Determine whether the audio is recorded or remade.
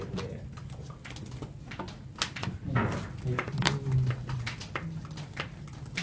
recorded